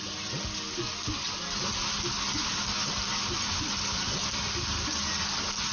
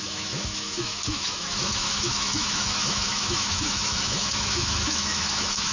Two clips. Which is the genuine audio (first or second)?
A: first